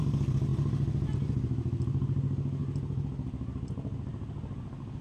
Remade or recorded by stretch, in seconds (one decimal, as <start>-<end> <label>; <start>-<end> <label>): 0.0-5.0 recorded